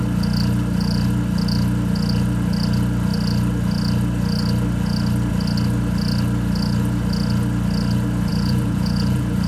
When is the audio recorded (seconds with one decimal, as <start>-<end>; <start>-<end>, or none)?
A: 0.0-8.3